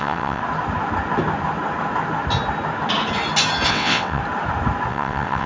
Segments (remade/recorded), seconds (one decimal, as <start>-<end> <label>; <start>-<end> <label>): 0.0-0.4 remade; 0.4-3.7 recorded; 3.7-4.2 remade; 4.2-4.9 recorded; 4.9-5.5 remade